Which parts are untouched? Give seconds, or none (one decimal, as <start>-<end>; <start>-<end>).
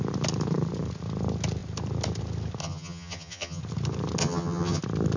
0.0-2.6; 3.6-4.2; 4.8-5.2